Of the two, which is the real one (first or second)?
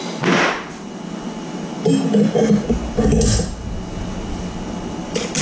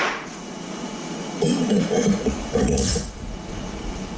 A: first